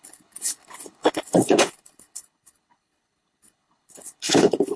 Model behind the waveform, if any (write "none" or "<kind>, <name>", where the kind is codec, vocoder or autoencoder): codec, HILCodec